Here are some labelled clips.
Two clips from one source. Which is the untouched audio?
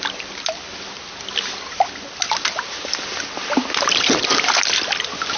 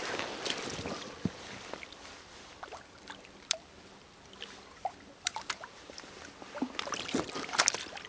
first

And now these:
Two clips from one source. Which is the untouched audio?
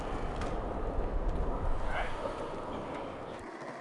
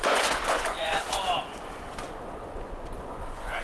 first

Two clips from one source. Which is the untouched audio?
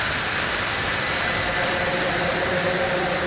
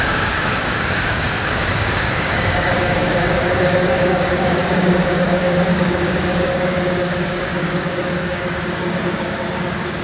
first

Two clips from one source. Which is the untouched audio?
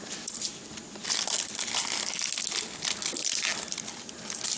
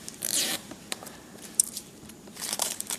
first